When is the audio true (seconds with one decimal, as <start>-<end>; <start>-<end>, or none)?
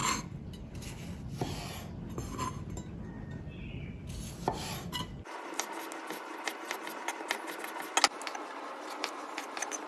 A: 0.0-9.9